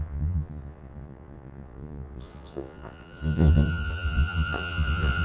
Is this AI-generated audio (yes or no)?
yes